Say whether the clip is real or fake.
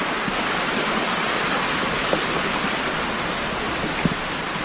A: real